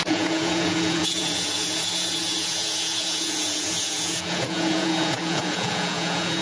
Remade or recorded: remade